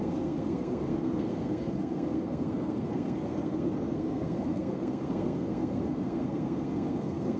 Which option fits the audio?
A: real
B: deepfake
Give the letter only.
B